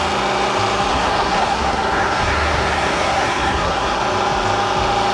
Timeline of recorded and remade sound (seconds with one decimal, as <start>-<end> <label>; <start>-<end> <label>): 0.0-0.9 recorded; 0.9-4.0 remade; 4.0-5.1 recorded